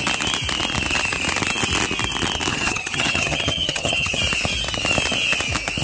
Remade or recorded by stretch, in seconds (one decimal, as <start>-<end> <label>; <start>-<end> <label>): 0.0-2.5 recorded; 2.5-4.2 remade; 4.2-5.8 recorded